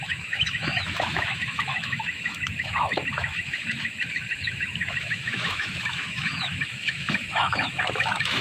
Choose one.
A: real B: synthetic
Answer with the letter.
B